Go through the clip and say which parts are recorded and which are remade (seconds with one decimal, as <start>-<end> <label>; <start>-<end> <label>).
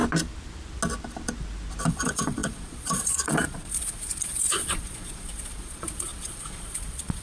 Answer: 0.0-1.9 recorded; 1.9-7.2 remade